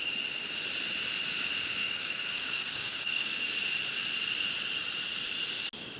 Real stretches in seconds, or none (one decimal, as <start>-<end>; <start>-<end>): 0.0-1.8; 3.4-6.0